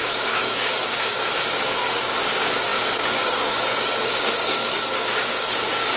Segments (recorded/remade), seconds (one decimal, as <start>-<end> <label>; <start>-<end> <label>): 0.0-6.0 remade